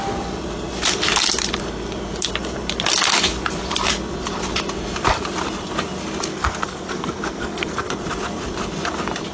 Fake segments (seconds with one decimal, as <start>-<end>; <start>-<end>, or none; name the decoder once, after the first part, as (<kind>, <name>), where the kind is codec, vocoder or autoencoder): 6.3-8.0 (codec, SNAC)